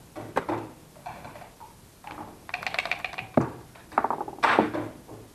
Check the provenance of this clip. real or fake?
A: real